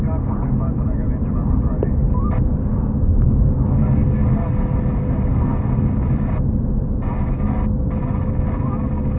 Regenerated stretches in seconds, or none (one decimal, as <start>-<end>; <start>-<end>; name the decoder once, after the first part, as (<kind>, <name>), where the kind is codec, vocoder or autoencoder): none

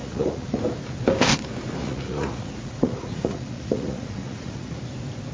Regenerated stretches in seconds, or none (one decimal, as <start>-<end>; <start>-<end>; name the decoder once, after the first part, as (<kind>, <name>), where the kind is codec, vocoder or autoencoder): 0.0-0.6 (vocoder, Vocos); 1.8-4.8

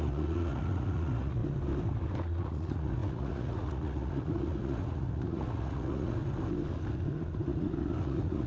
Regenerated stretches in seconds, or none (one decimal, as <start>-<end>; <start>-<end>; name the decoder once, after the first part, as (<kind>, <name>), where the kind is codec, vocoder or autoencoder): 0.0-1.4 (vocoder, Vocos); 2.4-6.2; 8.0-8.5

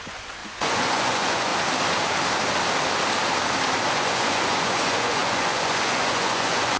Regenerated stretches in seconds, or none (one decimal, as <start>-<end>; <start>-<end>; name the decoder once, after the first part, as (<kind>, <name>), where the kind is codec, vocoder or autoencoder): 0.0-1.5 (vocoder, Vocos); 3.9-6.8